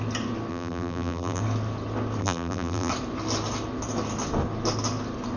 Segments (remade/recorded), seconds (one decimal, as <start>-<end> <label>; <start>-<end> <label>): 0.0-0.5 recorded; 0.5-1.4 remade; 1.4-2.2 recorded; 2.2-2.9 remade; 2.9-5.4 recorded